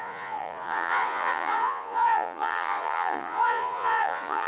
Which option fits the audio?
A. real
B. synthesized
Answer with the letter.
B